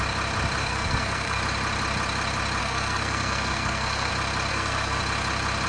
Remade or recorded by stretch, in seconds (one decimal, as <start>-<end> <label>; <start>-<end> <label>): 0.0-0.6 recorded; 0.6-1.4 remade; 1.4-2.6 recorded; 2.6-4.1 remade; 4.1-4.5 recorded; 4.5-5.0 remade; 5.0-5.7 recorded